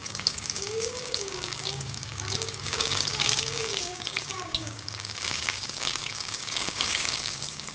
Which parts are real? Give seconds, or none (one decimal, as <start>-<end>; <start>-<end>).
none